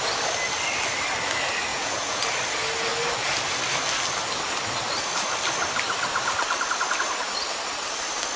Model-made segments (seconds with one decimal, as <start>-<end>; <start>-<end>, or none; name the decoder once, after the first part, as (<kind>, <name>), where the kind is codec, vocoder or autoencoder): 1.7-2.2 (vocoder, Vocos)